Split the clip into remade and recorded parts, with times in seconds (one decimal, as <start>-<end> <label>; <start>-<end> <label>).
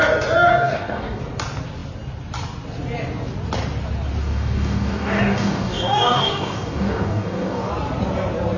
0.0-0.5 recorded; 0.5-1.2 remade; 1.2-4.2 recorded; 4.2-7.7 remade; 7.7-8.6 recorded